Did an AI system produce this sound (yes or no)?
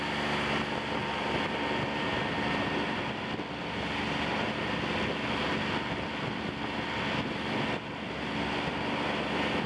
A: no